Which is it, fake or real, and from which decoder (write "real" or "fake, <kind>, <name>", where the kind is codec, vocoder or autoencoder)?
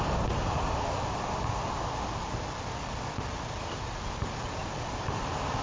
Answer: real